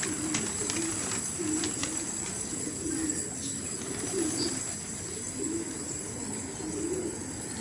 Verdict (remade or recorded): recorded